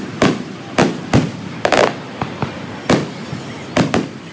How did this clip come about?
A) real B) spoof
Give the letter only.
A